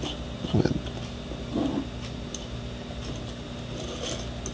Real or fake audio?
real